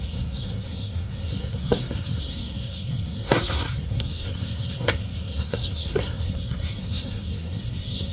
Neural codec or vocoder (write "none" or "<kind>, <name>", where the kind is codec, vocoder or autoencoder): codec, SNAC